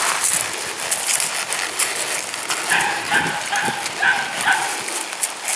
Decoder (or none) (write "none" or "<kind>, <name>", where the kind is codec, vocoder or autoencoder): none